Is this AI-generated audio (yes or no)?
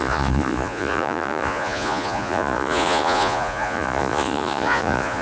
yes